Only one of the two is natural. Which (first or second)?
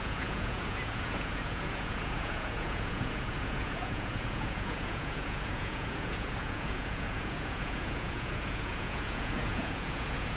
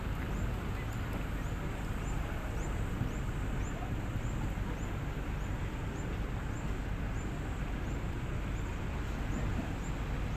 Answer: second